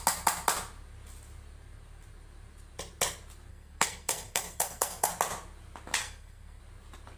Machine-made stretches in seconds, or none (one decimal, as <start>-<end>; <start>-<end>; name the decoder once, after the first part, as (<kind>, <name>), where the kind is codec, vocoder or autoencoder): 3.5-5.1 (codec, SNAC); 6.0-6.6